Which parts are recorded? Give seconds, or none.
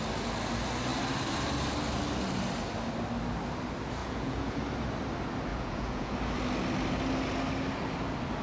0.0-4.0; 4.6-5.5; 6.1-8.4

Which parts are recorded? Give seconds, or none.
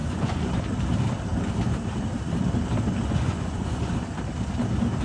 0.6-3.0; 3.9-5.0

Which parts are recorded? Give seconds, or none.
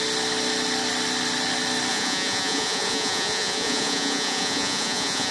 0.0-1.9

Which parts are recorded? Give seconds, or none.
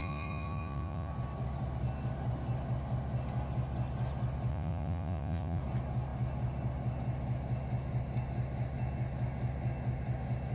1.1-4.5; 5.6-10.5